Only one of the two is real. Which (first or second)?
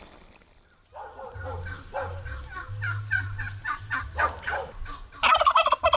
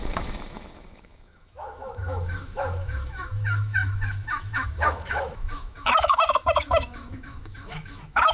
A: first